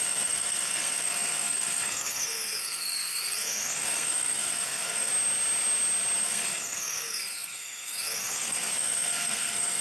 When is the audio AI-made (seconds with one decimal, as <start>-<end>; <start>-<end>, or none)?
0.0-5.1; 6.2-9.8